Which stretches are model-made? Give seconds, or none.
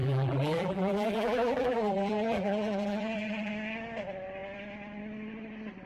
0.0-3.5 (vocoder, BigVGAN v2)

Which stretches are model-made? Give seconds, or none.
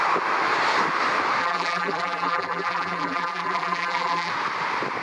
1.4-4.3 (vocoder, BigVGAN v2)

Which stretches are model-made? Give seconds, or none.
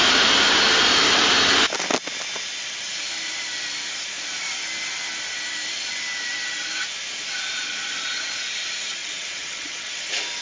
9.0-10.0 (vocoder, WaveNeXt)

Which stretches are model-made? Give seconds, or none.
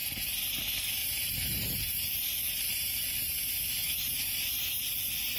0.0-0.6 (vocoder, BigVGAN v2); 1.0-3.4; 3.8-4.7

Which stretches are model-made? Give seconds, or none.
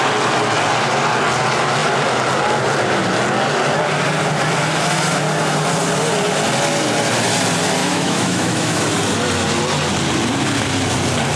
7.8-8.8 (autoencoder, DAC-VAE)